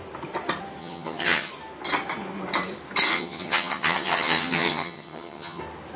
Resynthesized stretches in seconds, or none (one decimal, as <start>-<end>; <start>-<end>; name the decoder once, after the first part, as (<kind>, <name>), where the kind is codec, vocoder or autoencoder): 0.8-1.5 (vocoder, HiFi-GAN); 3.1-5.6